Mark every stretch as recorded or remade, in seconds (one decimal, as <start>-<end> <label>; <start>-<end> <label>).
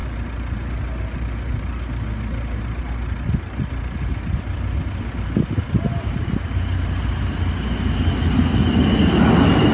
0.0-9.7 recorded